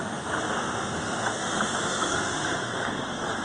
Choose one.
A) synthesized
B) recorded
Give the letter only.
A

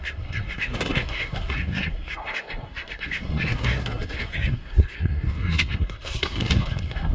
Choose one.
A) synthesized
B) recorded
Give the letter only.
A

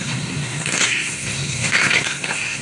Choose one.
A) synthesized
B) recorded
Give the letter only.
A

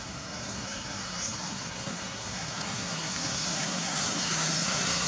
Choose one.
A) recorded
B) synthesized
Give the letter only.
B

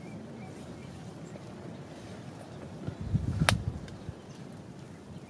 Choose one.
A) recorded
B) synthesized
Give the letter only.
A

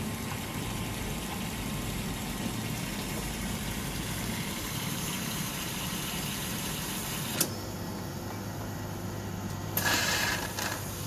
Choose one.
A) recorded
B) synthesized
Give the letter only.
B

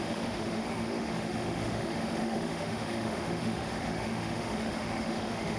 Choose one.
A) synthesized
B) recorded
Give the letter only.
A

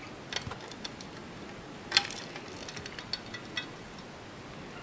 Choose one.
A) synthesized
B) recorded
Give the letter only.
B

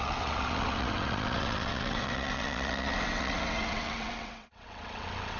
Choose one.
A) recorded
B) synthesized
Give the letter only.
B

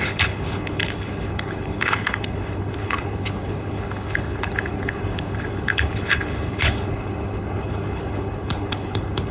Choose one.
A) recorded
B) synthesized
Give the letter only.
B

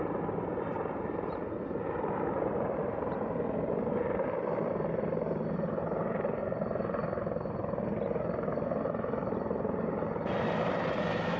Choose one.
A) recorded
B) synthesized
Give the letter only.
B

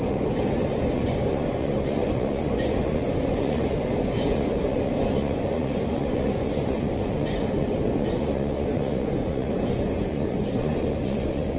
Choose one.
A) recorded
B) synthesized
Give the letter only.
B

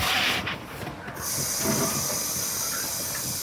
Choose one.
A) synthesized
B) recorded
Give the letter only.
B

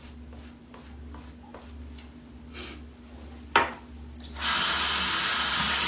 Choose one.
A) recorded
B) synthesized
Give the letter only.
A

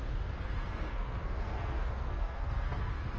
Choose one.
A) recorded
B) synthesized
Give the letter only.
B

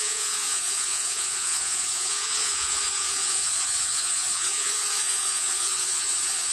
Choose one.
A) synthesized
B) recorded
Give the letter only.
A